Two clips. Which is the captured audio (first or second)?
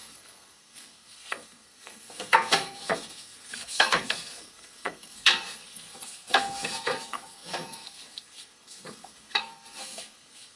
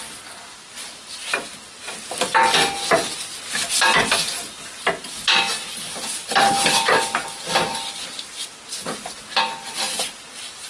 second